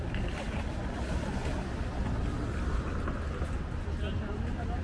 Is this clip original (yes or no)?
yes